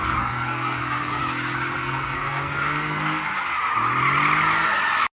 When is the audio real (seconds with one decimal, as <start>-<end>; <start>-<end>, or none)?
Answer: 1.2-1.8; 3.3-5.2